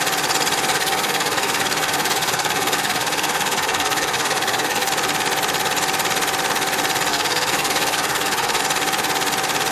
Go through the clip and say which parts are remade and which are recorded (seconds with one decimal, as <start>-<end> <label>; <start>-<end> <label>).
0.0-0.7 recorded; 0.7-4.9 remade; 4.9-7.1 recorded; 7.1-8.6 remade; 8.6-9.7 recorded